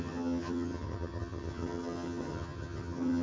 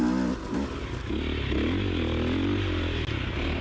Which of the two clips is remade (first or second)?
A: first